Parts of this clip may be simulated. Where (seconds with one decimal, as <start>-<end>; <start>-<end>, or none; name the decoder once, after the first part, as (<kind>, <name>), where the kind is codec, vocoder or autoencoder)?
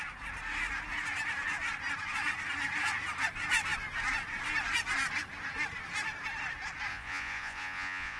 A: 6.9-8.2 (vocoder, Vocos)